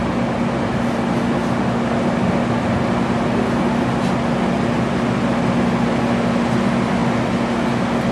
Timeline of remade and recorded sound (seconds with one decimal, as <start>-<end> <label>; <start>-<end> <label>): 0.0-8.1 recorded